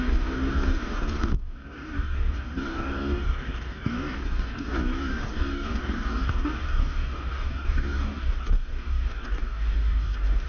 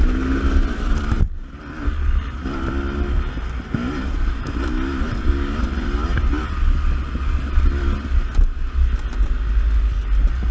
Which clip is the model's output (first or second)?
first